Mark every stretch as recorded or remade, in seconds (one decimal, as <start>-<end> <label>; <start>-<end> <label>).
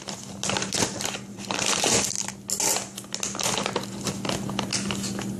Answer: 0.0-1.3 recorded; 1.3-2.1 remade; 2.1-5.4 recorded